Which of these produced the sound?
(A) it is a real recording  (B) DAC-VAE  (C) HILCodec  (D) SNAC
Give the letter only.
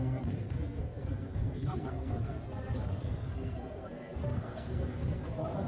D